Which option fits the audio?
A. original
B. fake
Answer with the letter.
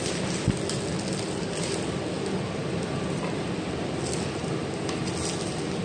A